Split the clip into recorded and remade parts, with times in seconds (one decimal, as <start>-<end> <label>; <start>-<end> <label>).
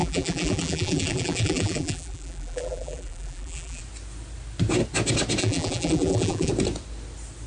0.0-3.8 remade; 3.8-5.4 recorded; 5.4-6.5 remade; 6.5-7.5 recorded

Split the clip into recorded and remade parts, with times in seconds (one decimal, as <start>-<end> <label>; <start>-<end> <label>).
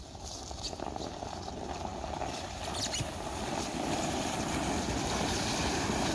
0.0-6.1 recorded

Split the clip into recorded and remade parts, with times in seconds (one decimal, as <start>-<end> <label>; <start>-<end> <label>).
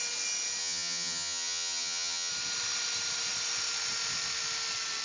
0.0-0.6 recorded; 0.6-2.3 remade; 2.3-5.0 recorded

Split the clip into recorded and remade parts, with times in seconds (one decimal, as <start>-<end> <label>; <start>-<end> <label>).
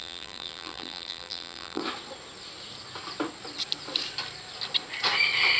0.0-1.8 remade; 1.8-5.6 recorded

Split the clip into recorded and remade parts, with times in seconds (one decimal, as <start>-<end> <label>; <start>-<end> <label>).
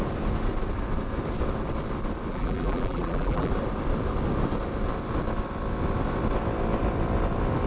0.0-2.3 recorded; 2.3-3.5 remade; 3.5-7.7 recorded